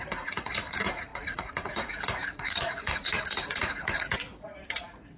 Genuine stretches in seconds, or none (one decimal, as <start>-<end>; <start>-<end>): none